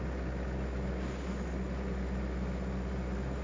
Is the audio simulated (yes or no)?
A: no